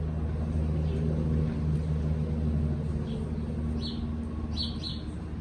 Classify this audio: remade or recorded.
recorded